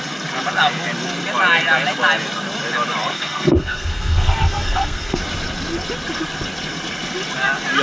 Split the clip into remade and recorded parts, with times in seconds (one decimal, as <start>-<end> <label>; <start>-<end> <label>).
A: 0.0-3.1 recorded; 3.1-5.2 remade; 5.2-7.8 recorded